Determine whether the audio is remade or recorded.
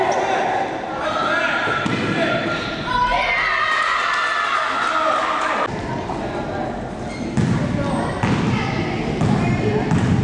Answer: recorded